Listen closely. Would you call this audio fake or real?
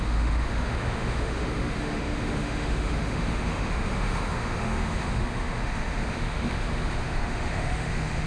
fake